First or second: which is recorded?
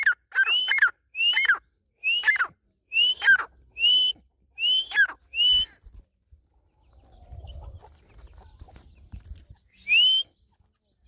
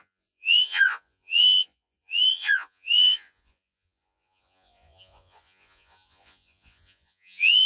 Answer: first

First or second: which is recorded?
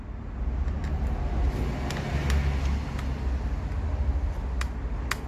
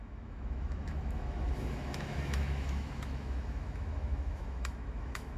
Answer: first